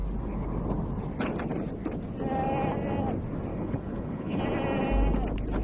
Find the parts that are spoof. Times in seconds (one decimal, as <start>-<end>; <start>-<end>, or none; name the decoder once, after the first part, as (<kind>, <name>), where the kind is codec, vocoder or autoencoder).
3.5-4.4 (codec, HILCodec)